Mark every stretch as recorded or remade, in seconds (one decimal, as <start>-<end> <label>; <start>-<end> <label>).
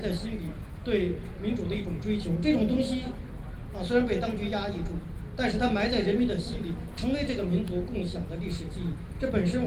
0.0-9.7 recorded